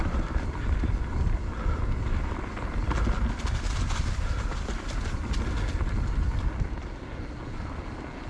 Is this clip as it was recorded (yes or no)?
yes